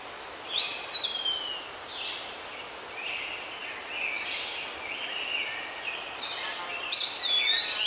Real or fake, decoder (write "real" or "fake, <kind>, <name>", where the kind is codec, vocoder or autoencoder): real